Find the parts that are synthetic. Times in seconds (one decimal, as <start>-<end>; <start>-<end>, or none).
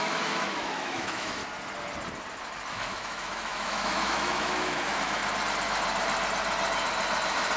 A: 0.0-1.4; 2.7-5.2